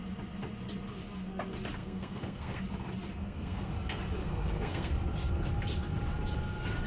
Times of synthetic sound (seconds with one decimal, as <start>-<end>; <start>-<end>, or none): 1.8-2.6; 3.2-3.7; 4.2-4.9